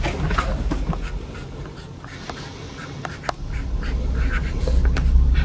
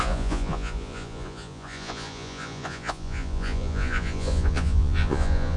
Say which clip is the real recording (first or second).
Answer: first